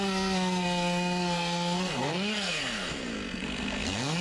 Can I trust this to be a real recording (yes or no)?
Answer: no